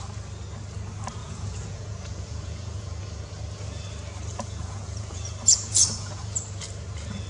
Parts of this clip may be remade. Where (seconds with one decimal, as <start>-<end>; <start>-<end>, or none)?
1.2-3.0; 4.3-6.4